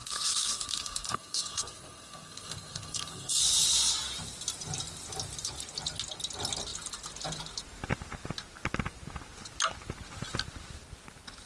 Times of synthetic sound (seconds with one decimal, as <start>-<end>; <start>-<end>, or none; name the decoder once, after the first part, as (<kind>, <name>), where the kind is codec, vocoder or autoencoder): 0.0-3.4 (codec, SNAC)